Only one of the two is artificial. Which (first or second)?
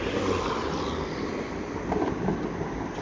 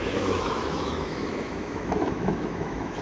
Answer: second